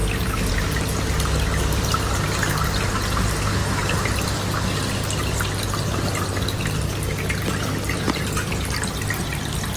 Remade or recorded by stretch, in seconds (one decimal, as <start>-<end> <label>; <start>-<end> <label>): 0.0-9.8 recorded